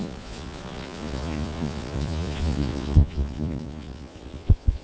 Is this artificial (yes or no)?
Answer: yes